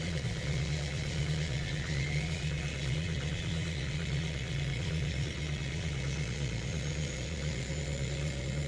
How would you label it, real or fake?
fake